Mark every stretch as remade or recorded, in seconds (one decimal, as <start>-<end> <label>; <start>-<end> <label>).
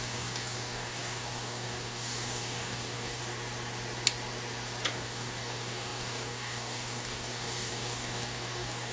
0.0-3.2 remade; 3.2-4.9 recorded; 4.9-8.9 remade